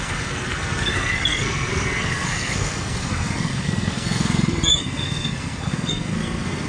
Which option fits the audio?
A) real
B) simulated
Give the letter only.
B